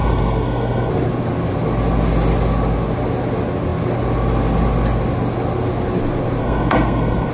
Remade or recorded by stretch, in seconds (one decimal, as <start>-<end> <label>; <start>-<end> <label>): 0.0-0.9 remade; 0.9-6.4 recorded; 6.4-7.3 remade